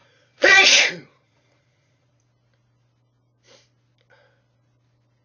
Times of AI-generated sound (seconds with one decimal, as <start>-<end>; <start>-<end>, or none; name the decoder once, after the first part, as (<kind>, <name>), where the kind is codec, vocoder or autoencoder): 0.0-2.2 (vocoder, Vocos)